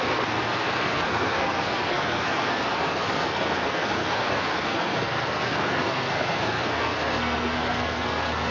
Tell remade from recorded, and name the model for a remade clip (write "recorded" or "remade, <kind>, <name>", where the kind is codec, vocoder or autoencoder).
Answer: remade, codec, SNAC